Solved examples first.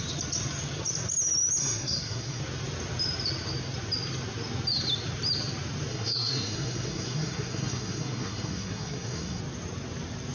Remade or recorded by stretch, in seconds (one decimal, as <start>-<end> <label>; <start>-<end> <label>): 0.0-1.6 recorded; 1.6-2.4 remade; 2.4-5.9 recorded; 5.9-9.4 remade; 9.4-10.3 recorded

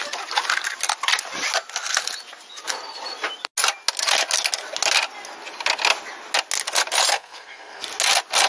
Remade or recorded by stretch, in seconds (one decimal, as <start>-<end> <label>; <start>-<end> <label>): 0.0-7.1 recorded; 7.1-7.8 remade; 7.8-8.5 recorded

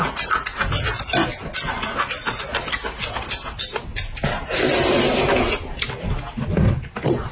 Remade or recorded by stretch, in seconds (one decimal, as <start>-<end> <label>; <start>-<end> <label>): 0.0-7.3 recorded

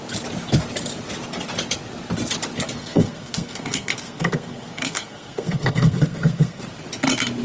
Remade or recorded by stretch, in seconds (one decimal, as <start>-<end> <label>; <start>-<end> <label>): 0.0-2.8 recorded; 2.8-6.6 remade; 6.6-7.4 recorded

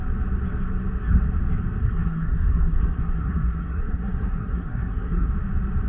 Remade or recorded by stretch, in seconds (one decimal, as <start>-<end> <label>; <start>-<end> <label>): 0.0-1.8 recorded; 1.8-5.3 remade; 5.3-5.9 recorded

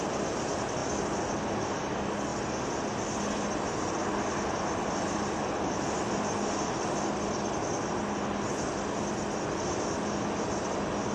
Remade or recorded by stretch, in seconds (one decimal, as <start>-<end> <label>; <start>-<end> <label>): 0.0-11.1 recorded

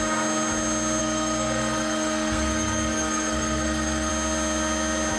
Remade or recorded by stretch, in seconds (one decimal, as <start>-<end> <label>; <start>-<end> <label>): 0.0-1.0 recorded; 1.0-4.1 remade; 4.1-5.2 recorded

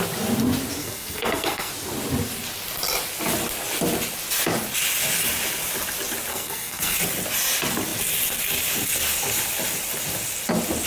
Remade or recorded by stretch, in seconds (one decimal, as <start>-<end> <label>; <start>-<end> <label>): 0.0-0.8 recorded; 0.8-1.7 remade; 1.7-6.3 recorded; 6.3-7.0 remade; 7.0-10.9 recorded